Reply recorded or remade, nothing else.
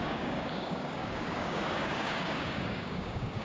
remade